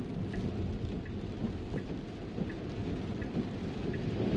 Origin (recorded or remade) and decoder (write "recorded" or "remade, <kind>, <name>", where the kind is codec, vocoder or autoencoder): recorded